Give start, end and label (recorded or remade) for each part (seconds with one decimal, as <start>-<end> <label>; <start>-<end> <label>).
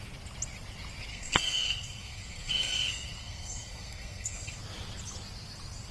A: 0.0-1.1 recorded; 1.1-4.6 remade; 4.6-5.9 recorded